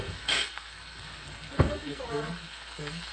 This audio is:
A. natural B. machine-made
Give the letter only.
B